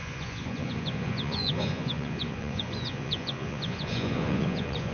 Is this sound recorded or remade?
remade